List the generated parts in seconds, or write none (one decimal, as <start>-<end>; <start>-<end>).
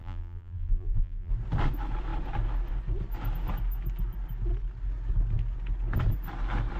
0.0-1.3